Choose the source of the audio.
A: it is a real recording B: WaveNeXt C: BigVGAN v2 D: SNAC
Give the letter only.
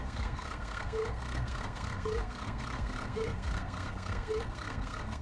D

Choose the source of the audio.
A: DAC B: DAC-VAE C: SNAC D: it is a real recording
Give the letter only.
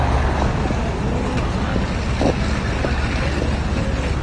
D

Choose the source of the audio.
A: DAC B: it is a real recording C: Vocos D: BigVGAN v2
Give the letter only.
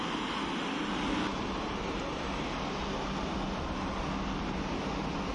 B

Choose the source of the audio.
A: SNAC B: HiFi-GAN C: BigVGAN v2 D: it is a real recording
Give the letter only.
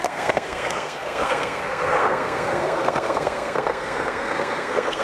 A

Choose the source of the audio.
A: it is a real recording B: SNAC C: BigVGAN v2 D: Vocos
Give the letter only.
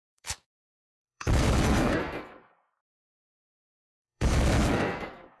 B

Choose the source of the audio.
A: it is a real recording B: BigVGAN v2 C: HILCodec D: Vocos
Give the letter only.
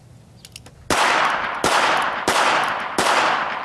A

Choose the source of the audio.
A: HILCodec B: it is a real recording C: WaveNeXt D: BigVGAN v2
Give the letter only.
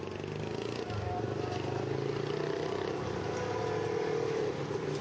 B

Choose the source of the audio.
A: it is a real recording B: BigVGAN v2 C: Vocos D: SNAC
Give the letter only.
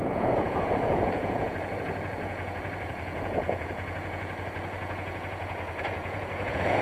C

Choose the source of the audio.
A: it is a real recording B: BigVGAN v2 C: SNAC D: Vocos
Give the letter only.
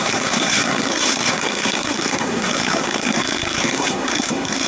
C